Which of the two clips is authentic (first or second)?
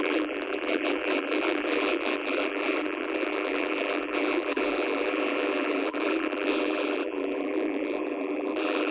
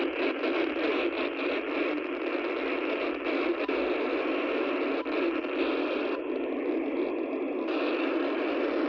second